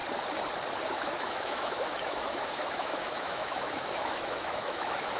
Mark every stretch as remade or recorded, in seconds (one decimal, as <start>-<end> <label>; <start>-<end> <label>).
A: 0.0-1.0 recorded; 1.0-5.2 remade